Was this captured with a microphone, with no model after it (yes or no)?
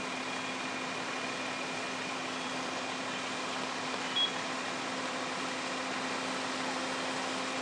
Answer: yes